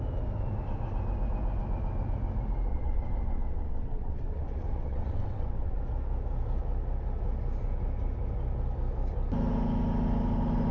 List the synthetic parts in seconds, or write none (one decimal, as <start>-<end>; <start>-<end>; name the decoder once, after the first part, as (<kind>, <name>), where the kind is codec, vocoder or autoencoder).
2.7-5.8 (vocoder, WaveNeXt)